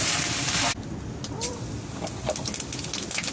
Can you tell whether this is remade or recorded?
recorded